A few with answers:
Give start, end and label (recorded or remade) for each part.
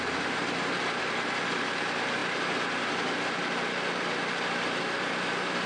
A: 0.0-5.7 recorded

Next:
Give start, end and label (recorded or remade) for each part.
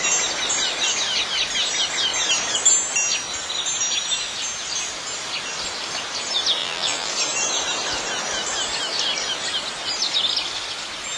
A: 0.0-6.6 recorded; 6.6-7.1 remade; 7.1-11.2 recorded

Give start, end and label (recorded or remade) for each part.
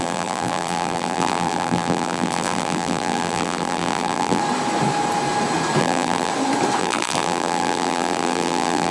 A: 0.0-4.4 remade; 4.4-5.8 recorded; 5.8-6.3 remade; 6.3-6.8 recorded; 6.8-8.9 remade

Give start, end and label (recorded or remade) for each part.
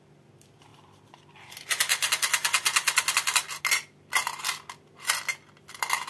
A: 0.0-6.1 recorded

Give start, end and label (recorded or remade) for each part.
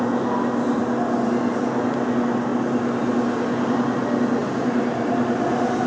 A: 0.0-5.9 recorded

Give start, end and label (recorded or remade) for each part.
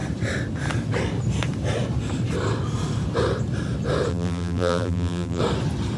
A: 0.0-4.1 recorded; 4.1-5.4 remade; 5.4-6.0 recorded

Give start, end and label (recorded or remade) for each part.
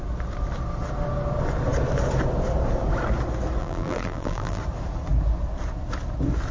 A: 0.0-3.6 recorded; 3.6-4.6 remade; 4.6-6.5 recorded